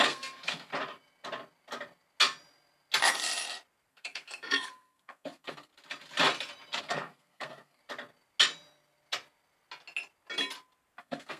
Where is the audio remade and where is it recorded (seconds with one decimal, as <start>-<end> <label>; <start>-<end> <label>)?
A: 0.0-0.7 remade; 0.7-3.9 recorded; 3.9-5.7 remade; 5.7-6.8 recorded; 6.8-7.8 remade; 7.8-11.0 recorded; 11.0-11.4 remade